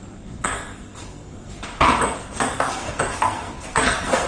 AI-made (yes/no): yes